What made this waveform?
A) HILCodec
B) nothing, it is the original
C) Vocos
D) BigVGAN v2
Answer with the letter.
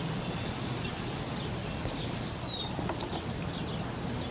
B